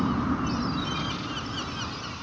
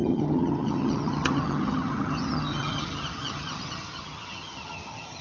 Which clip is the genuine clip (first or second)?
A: first